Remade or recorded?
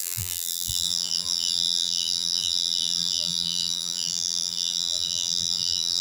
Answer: remade